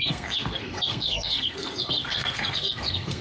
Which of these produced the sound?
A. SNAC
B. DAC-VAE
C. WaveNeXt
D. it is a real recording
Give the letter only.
A